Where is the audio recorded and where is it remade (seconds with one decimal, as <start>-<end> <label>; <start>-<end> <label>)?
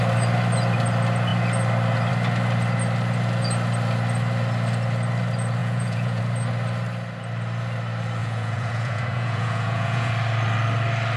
0.0-5.6 recorded; 5.6-6.2 remade; 6.2-8.2 recorded; 8.2-10.1 remade; 10.1-11.2 recorded